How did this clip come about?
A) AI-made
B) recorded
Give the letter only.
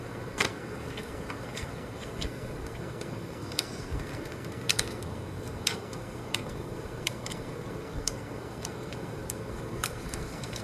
A